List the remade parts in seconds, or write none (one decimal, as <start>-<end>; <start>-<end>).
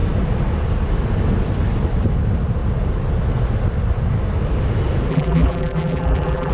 5.1-6.5